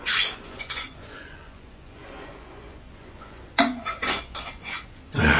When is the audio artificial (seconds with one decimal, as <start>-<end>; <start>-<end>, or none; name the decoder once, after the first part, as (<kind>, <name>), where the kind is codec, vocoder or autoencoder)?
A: 0.0-5.4 (vocoder, Vocos)